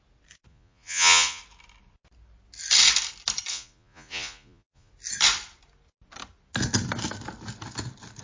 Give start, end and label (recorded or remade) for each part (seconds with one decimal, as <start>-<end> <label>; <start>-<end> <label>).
0.0-0.5 recorded; 0.5-1.4 remade; 1.4-3.5 recorded; 3.5-4.9 remade; 4.9-8.2 recorded